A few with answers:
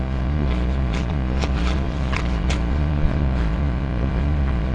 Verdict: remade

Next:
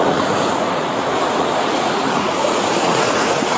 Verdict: remade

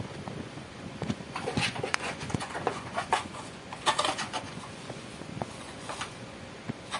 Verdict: remade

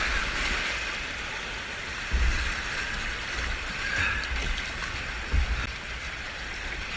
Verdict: recorded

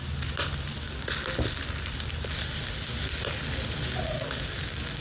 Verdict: recorded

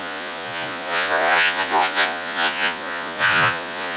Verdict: remade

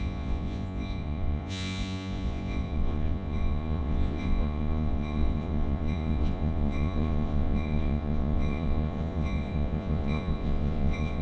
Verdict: remade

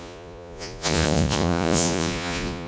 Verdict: remade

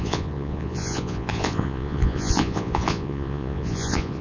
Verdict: remade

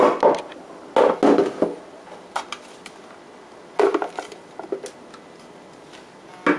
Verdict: recorded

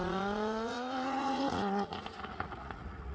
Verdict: remade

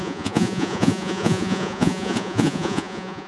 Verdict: remade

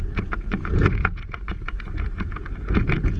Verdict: remade